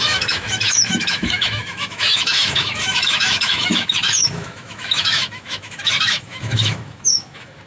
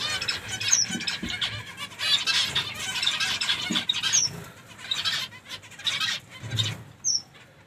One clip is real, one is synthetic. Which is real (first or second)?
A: second